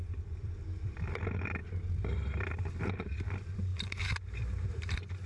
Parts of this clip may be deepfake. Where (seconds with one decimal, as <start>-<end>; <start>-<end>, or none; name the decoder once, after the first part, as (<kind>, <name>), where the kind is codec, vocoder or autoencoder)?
0.0-1.2 (vocoder, BigVGAN v2); 1.6-2.6